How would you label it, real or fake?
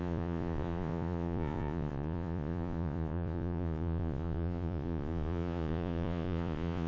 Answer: fake